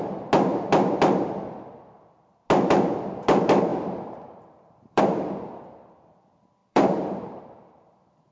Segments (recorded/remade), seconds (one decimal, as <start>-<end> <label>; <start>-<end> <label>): 0.0-3.7 recorded; 3.7-5.0 remade; 5.0-6.6 recorded; 6.6-7.4 remade; 7.4-8.3 recorded